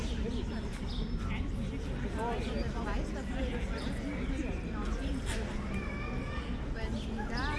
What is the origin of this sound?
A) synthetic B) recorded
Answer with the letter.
B